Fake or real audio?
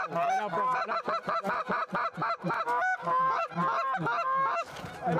real